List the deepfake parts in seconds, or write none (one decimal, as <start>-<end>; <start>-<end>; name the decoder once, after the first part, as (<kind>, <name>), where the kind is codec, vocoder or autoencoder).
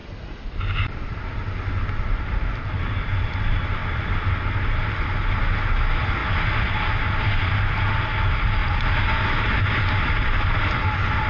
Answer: none